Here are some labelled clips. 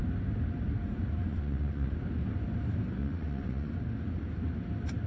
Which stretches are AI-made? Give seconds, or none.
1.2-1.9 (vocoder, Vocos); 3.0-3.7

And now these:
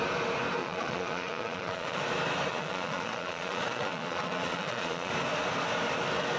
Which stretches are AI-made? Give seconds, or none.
0.6-2.0 (vocoder, Vocos); 2.5-5.1

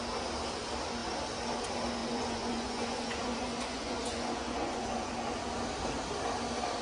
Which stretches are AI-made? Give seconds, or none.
2.0-5.1 (vocoder, Vocos)